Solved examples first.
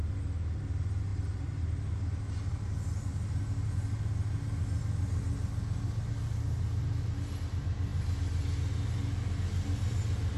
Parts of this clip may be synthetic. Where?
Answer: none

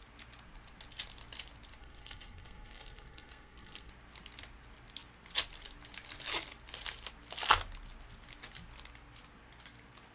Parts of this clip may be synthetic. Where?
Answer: 1.8-3.9 (codec, SNAC)

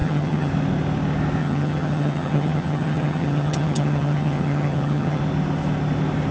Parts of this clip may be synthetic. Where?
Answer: 0.0-0.5 (vocoder, HiFi-GAN); 1.4-5.2

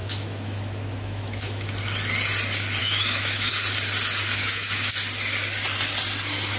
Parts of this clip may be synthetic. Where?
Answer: 0.0-1.7 (autoencoder, DAC-VAE); 2.8-3.5; 4.4-4.9